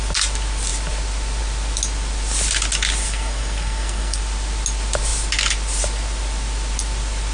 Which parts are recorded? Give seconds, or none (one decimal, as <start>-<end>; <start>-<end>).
0.0-3.0; 4.2-7.3